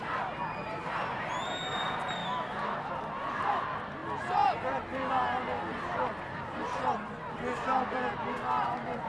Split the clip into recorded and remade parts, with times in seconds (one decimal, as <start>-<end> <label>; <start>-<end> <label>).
0.0-2.2 recorded; 2.2-2.9 remade; 2.9-9.1 recorded